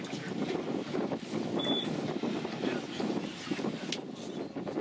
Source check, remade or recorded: recorded